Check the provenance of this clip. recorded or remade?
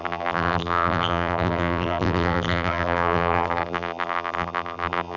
remade